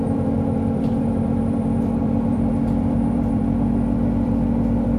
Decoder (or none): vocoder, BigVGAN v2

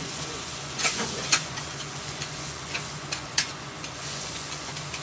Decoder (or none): vocoder, Vocos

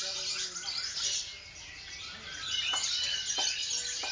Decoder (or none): none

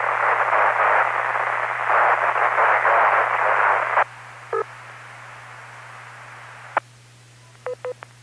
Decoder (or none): none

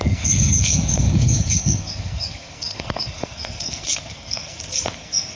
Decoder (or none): codec, SNAC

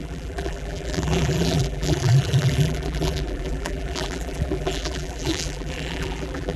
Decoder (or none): vocoder, BigVGAN v2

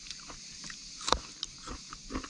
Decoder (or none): none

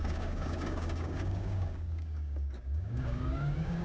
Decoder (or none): codec, DAC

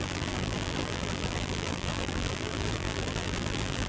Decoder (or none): vocoder, BigVGAN v2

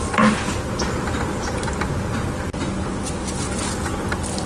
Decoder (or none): none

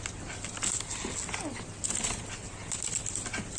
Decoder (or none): none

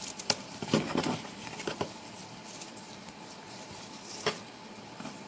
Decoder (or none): vocoder, BigVGAN v2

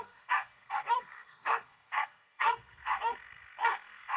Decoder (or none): codec, SNAC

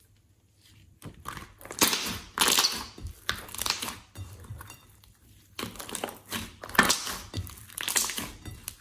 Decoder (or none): none